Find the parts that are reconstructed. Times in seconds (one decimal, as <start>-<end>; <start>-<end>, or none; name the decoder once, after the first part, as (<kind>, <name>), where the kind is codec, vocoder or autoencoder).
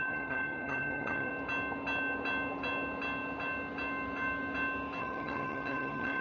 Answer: 0.0-1.3 (vocoder, HiFi-GAN); 5.0-6.2